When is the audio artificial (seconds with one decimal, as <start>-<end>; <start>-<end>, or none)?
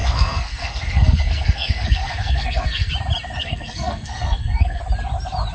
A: 0.0-2.9; 3.4-4.8